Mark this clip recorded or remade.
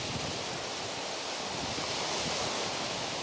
recorded